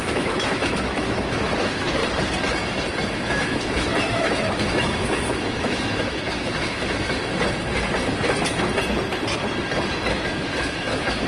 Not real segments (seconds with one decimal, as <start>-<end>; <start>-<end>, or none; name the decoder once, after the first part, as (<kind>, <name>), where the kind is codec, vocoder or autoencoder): 0.0-2.0 (autoencoder, DAC-VAE); 3.1-7.2; 10.1-11.3